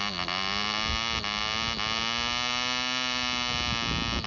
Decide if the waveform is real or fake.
real